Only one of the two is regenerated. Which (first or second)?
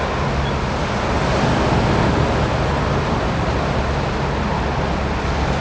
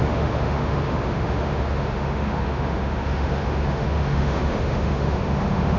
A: second